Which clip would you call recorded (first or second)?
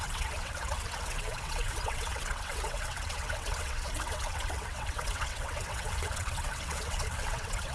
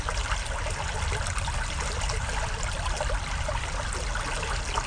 second